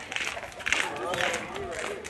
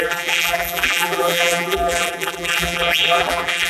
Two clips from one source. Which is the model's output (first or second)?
second